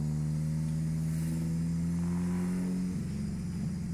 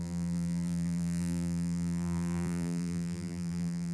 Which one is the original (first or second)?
first